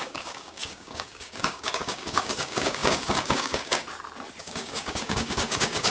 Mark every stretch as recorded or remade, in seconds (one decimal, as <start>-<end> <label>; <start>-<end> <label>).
0.0-3.8 remade; 3.8-4.4 recorded; 4.4-5.9 remade